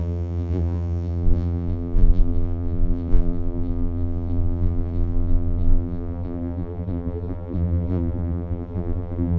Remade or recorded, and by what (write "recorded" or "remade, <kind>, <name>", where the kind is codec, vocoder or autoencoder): remade, vocoder, BigVGAN v2